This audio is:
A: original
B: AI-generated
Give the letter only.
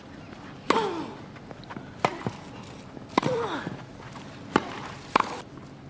A